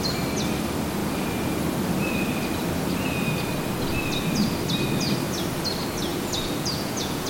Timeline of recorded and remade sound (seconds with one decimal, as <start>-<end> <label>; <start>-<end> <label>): 0.0-6.1 recorded; 6.1-7.3 remade